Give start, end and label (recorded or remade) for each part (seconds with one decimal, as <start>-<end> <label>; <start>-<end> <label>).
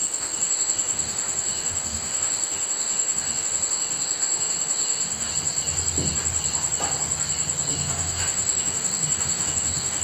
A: 0.0-5.3 remade; 5.3-7.7 recorded; 7.7-10.0 remade